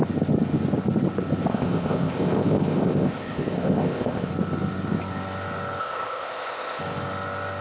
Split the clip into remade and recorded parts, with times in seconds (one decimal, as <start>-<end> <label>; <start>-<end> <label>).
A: 0.0-1.5 recorded; 1.5-4.3 remade; 4.3-5.8 recorded; 5.8-6.8 remade; 6.8-7.6 recorded